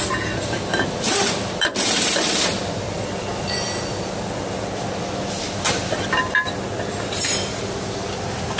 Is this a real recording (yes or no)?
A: yes